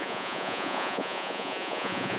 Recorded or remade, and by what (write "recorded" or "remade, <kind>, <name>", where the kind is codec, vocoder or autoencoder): remade, vocoder, Vocos